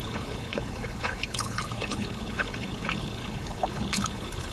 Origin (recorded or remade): remade